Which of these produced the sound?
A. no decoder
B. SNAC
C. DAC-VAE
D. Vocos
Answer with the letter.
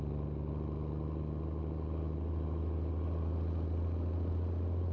A